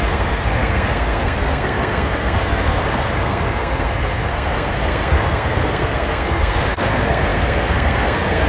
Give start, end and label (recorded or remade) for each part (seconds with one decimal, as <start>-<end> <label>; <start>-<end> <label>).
0.0-8.5 remade